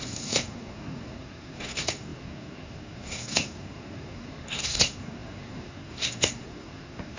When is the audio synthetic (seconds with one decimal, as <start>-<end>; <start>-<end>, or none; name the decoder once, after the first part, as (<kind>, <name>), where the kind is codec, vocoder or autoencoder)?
0.0-7.2 (codec, SNAC)